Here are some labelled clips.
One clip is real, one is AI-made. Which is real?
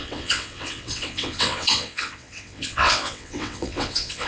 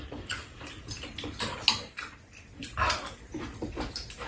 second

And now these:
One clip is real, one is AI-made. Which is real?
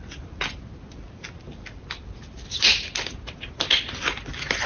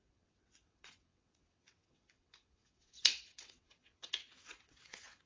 first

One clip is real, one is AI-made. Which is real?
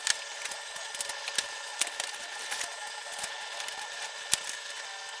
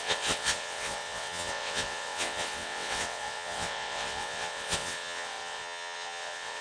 first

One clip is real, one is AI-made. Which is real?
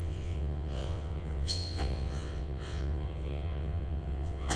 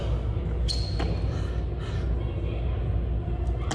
second